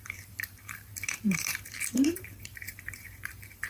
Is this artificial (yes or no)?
yes